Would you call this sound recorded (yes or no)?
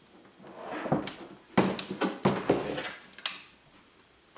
yes